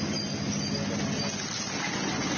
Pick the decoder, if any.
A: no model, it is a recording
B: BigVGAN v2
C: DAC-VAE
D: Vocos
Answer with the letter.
A